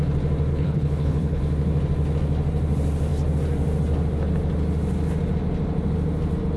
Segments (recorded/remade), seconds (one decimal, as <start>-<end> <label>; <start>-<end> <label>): 0.0-0.5 recorded; 0.5-1.4 remade; 1.4-6.6 recorded